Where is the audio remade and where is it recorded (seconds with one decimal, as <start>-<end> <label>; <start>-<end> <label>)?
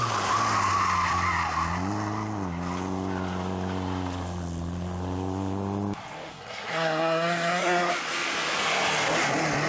0.0-6.3 recorded; 6.3-7.9 remade; 7.9-9.7 recorded